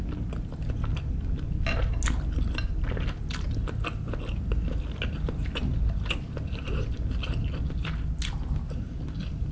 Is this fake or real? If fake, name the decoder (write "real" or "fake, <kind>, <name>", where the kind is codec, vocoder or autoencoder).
real